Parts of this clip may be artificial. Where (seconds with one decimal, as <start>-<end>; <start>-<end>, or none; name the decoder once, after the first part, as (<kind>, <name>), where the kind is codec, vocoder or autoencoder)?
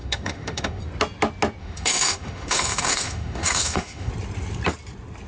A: 0.0-0.8 (autoencoder, DAC-VAE); 1.6-4.1